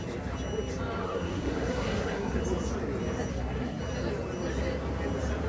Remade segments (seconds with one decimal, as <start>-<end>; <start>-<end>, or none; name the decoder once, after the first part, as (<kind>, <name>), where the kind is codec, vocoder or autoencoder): 1.0-2.4 (codec, SNAC); 3.3-3.8